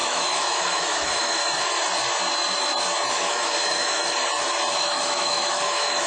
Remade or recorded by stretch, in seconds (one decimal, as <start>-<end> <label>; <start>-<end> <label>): 0.0-1.4 remade; 1.4-3.1 recorded; 3.1-4.0 remade; 4.0-4.7 recorded; 4.7-6.1 remade